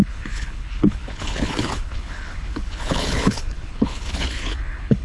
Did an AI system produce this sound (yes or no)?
yes